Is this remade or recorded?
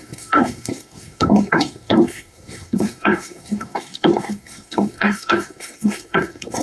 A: remade